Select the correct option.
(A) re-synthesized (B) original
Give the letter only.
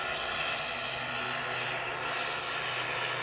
B